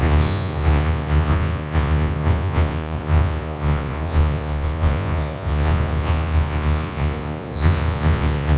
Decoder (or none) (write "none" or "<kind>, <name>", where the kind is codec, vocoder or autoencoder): vocoder, Vocos